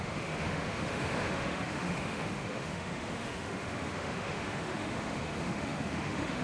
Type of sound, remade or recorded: remade